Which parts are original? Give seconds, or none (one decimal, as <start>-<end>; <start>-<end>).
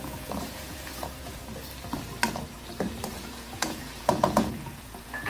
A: 1.4-3.2